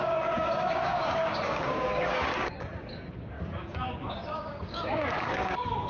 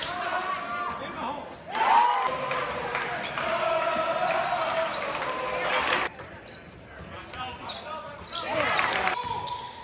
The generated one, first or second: first